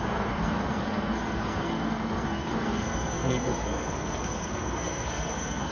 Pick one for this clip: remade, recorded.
remade